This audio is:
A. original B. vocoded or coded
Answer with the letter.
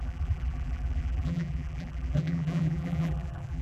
B